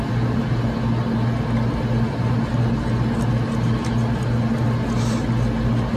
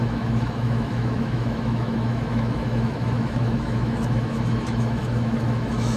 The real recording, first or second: first